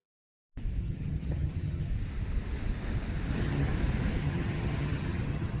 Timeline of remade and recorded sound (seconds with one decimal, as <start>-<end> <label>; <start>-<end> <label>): 0.0-0.8 recorded; 0.8-1.9 remade; 1.9-3.3 recorded; 3.3-3.7 remade; 3.7-4.2 recorded; 4.2-5.6 remade